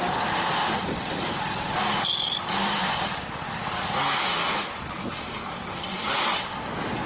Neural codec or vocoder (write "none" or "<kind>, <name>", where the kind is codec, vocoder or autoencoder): none